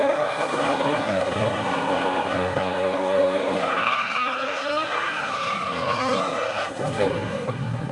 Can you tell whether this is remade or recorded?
remade